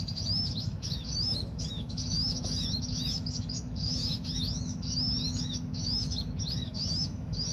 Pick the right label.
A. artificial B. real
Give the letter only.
A